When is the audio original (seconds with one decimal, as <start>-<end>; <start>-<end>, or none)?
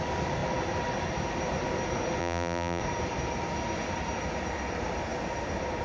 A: 0.0-2.2; 2.8-5.8